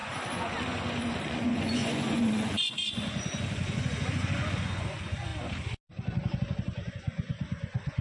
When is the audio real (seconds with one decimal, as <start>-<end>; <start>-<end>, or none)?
5.3-6.9